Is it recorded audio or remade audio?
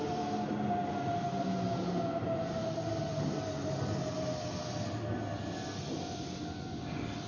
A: recorded